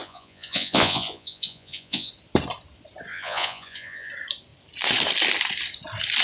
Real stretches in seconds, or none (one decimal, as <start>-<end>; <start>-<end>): 2.1-3.1; 4.1-6.2